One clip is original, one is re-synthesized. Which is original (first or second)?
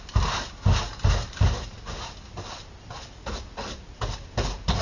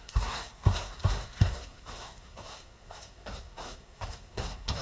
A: first